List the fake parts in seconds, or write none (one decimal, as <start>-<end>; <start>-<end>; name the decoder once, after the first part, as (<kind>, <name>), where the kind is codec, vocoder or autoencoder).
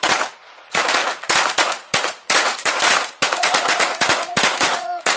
0.0-5.2 (vocoder, Vocos)